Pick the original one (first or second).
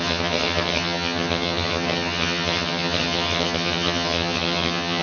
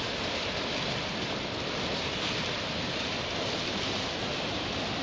second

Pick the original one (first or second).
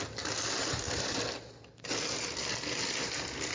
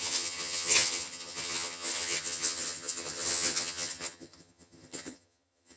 first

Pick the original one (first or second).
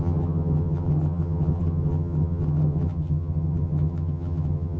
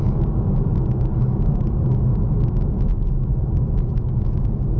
second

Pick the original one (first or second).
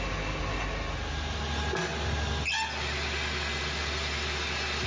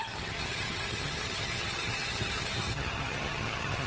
first